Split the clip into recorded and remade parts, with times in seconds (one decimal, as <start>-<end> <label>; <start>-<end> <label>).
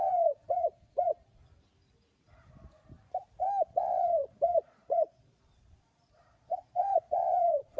0.0-1.4 remade; 1.4-3.7 recorded; 3.7-7.8 remade